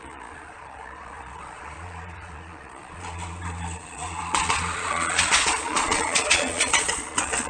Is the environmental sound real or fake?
fake